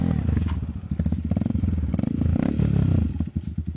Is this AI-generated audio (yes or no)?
no